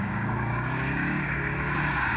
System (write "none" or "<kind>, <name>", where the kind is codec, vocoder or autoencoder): codec, DAC